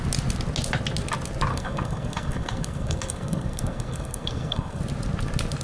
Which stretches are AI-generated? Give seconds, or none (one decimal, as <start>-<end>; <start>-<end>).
1.5-4.8